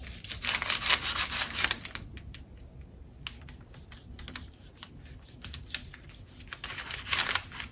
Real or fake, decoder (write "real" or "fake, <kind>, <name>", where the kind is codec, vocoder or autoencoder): real